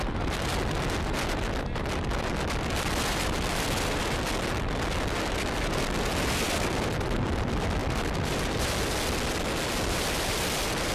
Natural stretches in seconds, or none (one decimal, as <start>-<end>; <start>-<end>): 0.0-7.8; 8.3-10.9